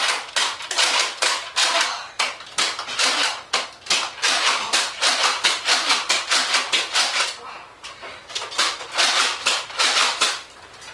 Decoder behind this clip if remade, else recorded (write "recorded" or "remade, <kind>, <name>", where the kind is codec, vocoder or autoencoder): recorded